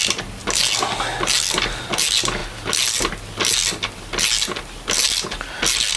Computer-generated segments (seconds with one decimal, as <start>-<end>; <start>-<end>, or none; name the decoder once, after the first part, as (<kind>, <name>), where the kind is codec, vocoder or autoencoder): none